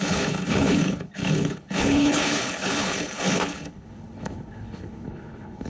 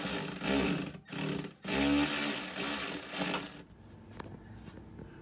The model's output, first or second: first